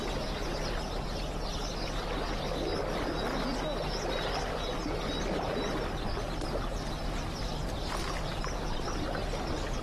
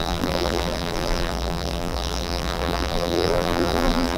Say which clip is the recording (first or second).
first